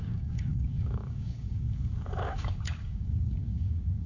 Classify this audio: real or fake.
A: fake